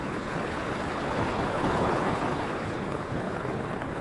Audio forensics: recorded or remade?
remade